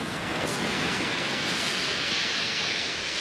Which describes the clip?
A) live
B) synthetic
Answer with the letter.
B